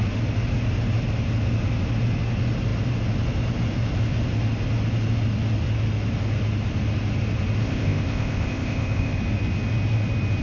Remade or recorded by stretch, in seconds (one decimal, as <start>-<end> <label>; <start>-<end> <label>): 0.0-7.6 recorded; 7.6-9.2 remade; 9.2-10.4 recorded